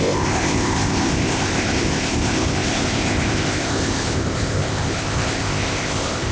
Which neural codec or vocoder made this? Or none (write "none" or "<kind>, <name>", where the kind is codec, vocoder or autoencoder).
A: codec, ZipCodec